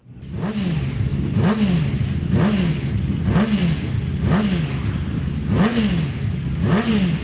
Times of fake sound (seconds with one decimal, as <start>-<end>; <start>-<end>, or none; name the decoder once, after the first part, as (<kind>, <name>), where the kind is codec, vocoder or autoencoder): none